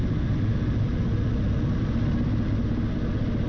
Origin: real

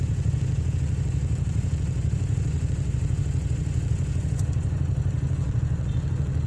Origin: fake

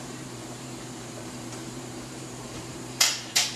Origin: fake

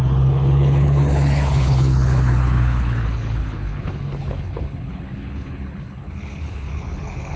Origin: fake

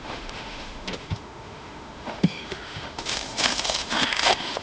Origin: fake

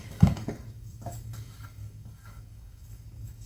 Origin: fake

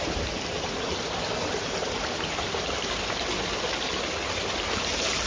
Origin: real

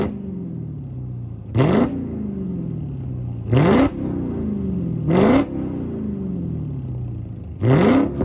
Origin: real